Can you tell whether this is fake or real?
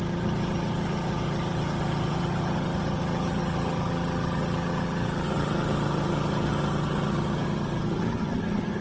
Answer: fake